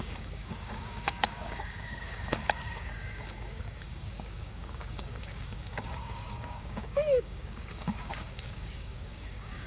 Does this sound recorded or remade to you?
remade